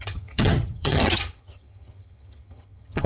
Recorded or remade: remade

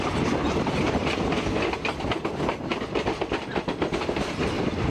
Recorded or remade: recorded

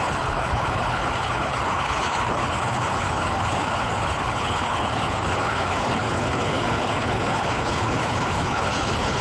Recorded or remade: remade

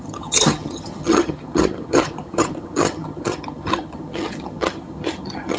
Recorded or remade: remade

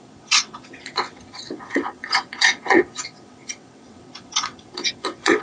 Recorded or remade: remade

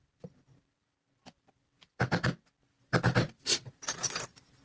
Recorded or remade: remade